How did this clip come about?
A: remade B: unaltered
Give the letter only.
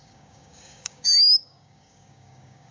A